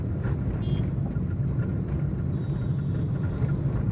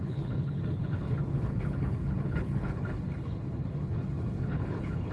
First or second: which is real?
first